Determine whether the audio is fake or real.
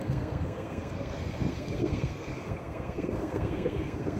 fake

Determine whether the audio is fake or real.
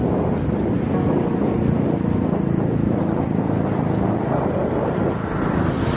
real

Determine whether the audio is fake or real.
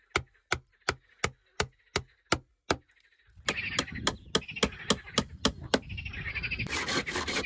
real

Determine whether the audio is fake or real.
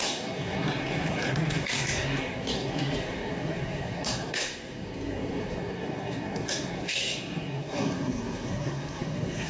fake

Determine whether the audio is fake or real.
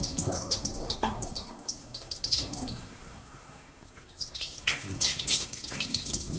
fake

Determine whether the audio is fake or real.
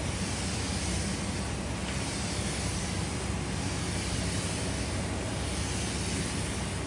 real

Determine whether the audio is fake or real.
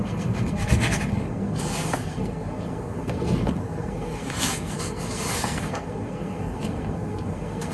fake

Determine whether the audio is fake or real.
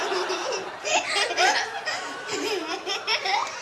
real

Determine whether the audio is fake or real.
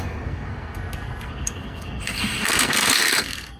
fake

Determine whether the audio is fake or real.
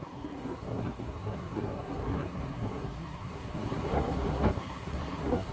fake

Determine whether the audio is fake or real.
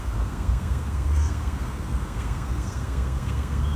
fake